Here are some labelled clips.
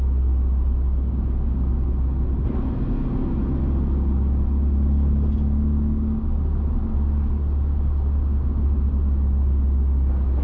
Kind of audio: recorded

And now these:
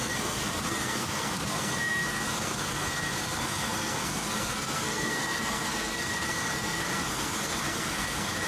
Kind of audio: remade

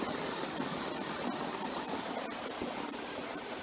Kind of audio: recorded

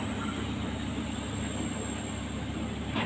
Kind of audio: recorded